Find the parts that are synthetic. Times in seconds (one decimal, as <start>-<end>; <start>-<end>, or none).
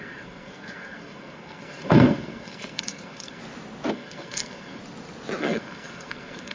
0.0-3.4; 3.9-4.8; 5.4-6.5